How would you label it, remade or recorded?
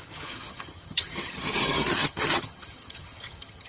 remade